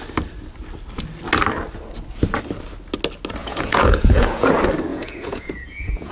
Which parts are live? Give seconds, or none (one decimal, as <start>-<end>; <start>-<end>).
0.0-3.4; 4.5-4.9